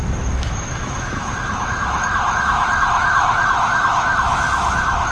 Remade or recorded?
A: remade